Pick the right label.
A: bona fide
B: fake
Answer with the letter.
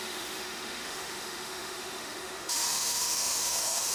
B